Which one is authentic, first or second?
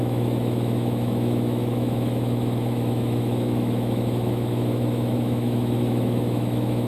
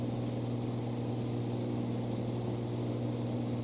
second